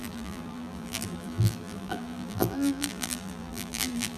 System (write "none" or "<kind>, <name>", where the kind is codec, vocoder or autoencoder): vocoder, BigVGAN v2